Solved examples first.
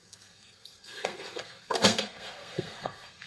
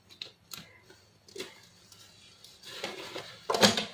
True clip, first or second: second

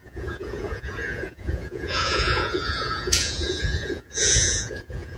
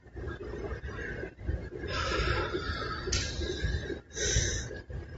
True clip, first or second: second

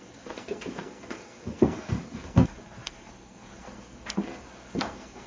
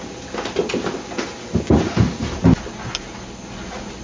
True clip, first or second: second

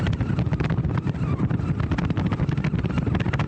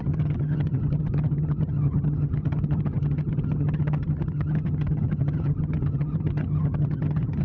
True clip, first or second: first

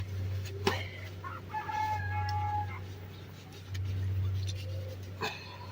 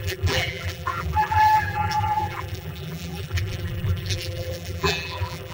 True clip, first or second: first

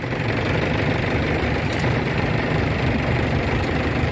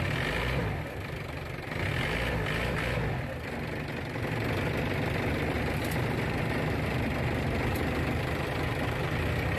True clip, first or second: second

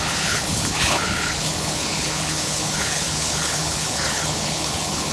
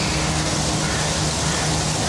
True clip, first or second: second